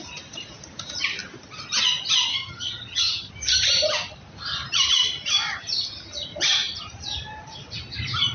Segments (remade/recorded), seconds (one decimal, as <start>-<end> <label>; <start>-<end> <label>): 0.0-2.3 recorded; 2.3-3.3 remade; 3.3-8.3 recorded